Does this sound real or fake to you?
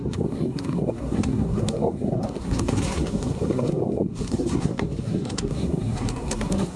fake